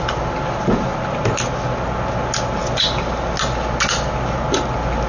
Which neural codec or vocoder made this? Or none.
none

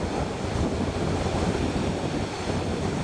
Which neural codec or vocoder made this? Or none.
none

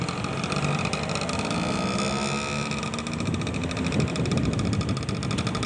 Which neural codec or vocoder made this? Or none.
none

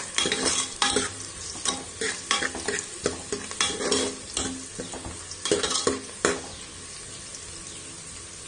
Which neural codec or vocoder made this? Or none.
none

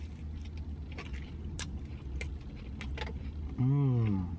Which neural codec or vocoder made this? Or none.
none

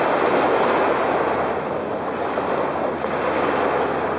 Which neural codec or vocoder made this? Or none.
none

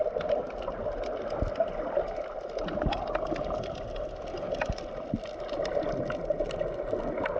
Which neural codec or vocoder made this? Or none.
none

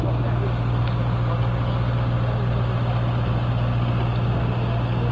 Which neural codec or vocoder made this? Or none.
none